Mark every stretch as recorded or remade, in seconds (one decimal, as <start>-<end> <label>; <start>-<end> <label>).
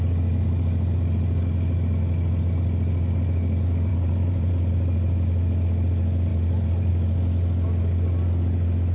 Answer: 0.0-3.9 recorded; 3.9-4.5 remade; 4.5-6.3 recorded; 6.3-6.9 remade; 6.9-8.9 recorded